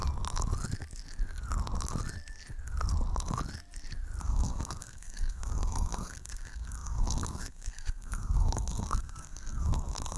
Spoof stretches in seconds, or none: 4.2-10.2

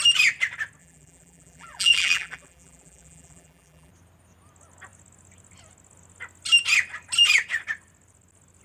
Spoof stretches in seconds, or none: 0.8-3.9

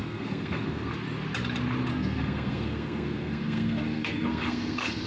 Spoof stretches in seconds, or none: 0.0-0.9; 1.9-5.1